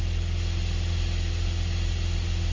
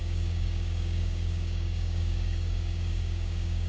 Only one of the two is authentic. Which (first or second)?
first